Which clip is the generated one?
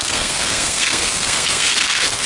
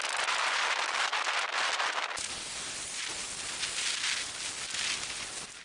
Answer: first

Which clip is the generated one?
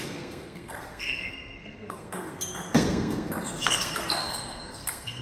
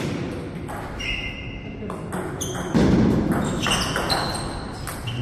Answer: first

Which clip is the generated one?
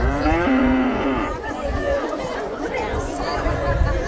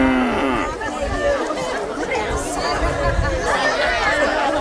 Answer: first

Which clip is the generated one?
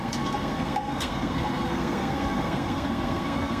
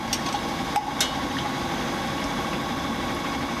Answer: first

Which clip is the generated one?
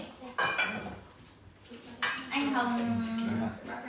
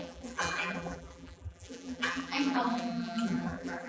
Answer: second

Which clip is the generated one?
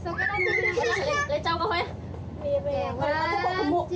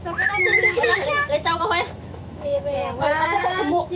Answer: second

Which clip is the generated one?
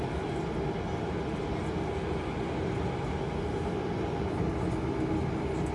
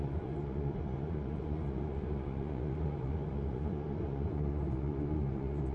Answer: second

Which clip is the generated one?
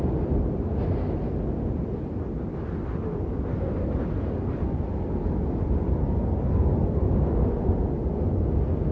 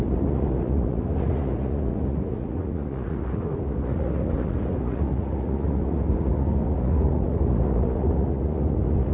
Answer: second